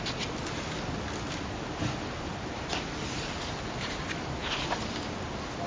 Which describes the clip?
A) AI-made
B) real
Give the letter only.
B